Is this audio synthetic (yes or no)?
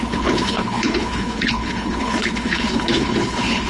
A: yes